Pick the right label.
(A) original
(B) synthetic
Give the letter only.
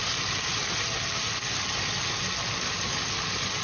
A